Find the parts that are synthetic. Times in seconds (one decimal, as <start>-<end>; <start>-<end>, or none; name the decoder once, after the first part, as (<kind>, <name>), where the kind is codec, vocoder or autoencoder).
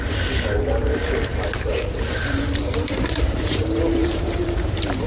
1.7-5.1 (vocoder, BigVGAN v2)